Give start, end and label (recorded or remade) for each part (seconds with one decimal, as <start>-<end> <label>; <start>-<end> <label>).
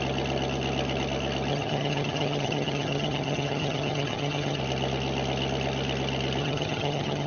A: 0.0-1.5 recorded; 1.5-4.6 remade; 4.6-6.4 recorded; 6.4-7.3 remade